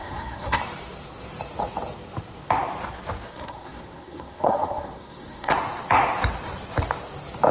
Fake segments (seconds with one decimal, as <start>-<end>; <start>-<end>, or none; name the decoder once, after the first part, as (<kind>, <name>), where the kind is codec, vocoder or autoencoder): 0.0-0.6 (codec, SNAC); 3.3-5.5